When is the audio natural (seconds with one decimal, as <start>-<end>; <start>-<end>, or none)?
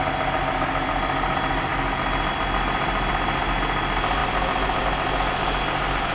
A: 0.0-6.1